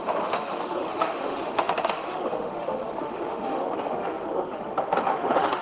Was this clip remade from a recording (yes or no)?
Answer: yes